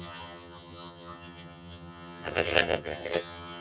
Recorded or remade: remade